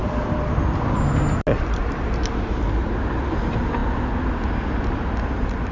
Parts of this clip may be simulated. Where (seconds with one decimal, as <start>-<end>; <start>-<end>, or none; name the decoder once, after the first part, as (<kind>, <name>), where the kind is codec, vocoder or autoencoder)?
none